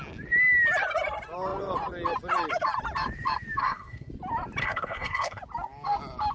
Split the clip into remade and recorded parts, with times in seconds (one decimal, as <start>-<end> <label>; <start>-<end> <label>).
0.0-3.6 recorded; 3.6-4.1 remade; 4.1-4.6 recorded; 4.6-5.4 remade; 5.4-6.3 recorded